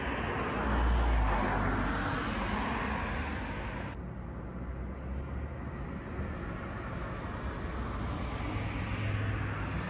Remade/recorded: recorded